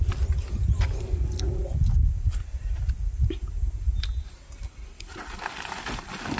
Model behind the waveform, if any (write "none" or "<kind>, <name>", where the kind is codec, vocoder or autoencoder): none